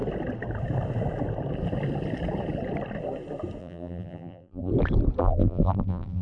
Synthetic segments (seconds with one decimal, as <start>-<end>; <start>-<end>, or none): 3.6-4.7; 5.2-6.2